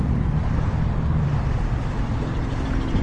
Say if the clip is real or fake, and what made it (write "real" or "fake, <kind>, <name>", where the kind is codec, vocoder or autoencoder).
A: fake, vocoder, BigVGAN v2